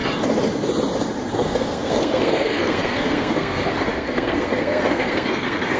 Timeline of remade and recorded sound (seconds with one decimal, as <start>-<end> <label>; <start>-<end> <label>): 0.0-1.3 recorded; 1.3-5.8 remade